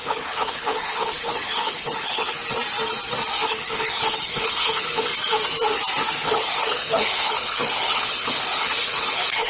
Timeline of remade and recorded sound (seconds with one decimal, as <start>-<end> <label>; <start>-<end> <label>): 0.0-2.4 remade; 2.4-3.4 recorded; 3.4-5.1 remade; 5.1-6.2 recorded; 6.2-9.5 remade